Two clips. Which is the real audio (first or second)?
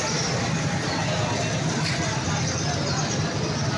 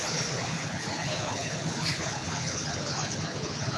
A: first